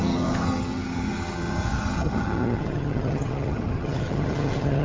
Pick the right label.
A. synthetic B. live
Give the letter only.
A